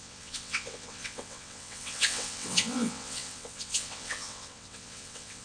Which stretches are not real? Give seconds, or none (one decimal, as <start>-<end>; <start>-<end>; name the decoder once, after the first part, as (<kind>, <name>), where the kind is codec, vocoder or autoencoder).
0.0-5.4 (vocoder, WaveNeXt)